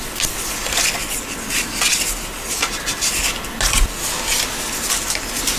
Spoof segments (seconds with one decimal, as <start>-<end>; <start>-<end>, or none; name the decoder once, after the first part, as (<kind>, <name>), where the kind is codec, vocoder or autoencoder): none